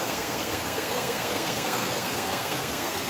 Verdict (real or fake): fake